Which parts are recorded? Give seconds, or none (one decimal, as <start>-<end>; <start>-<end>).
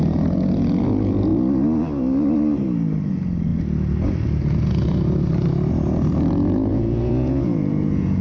0.0-6.7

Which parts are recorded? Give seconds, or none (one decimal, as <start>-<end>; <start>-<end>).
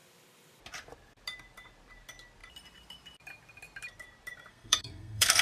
0.0-4.5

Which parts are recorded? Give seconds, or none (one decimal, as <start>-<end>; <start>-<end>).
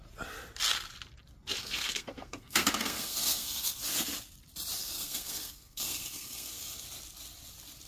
0.0-1.6; 3.8-4.8; 6.8-7.9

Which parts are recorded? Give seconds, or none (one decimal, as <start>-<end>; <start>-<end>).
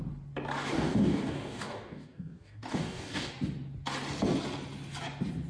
0.0-0.7; 3.3-5.5